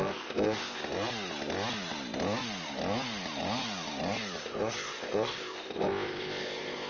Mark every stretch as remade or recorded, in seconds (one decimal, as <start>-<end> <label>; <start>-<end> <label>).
0.0-0.8 remade; 0.8-4.4 recorded; 4.4-6.9 remade